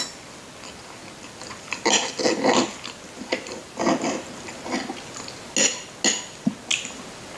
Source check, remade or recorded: recorded